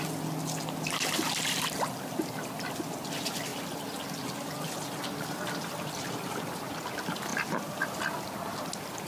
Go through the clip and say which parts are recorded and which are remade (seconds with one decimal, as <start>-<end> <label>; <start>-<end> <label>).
0.0-9.1 recorded